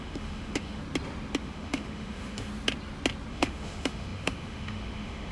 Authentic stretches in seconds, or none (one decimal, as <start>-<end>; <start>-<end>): 0.8-1.4; 2.5-3.3